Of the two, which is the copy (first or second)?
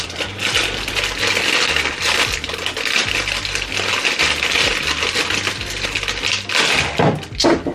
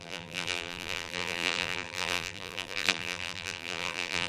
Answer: second